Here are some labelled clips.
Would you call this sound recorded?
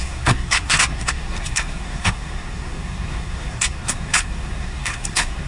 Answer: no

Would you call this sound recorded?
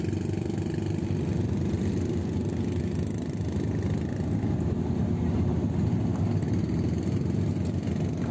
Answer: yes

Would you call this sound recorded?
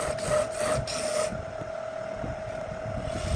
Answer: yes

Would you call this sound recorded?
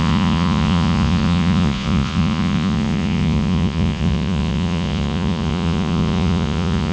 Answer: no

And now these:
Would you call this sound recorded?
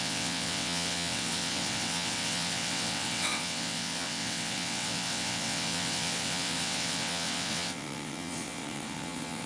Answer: no